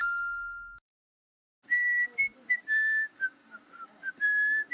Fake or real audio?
real